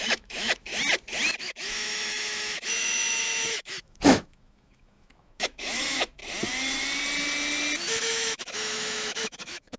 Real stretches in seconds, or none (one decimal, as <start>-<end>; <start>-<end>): 0.7-1.4; 6.2-8.0